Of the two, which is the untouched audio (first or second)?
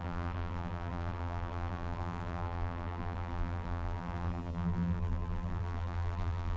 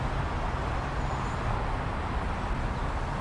second